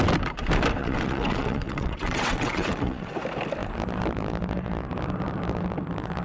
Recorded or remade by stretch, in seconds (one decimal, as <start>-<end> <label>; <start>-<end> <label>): 0.0-0.8 recorded; 0.8-3.1 remade; 3.1-6.2 recorded